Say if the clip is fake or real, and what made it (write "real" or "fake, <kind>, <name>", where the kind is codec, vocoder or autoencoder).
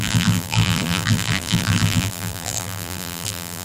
fake, vocoder, BigVGAN v2